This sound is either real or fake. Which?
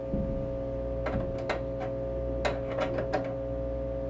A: real